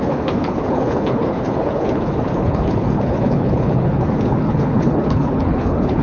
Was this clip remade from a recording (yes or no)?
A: yes